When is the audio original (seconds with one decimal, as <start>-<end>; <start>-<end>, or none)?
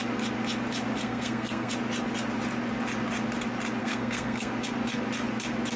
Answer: 0.0-1.0; 1.7-3.8; 4.5-5.8